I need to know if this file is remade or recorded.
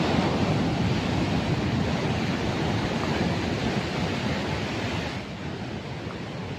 recorded